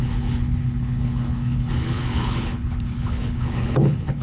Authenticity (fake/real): fake